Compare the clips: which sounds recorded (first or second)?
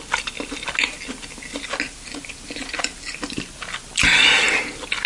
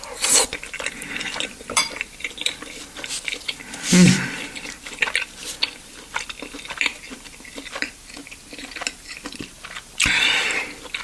first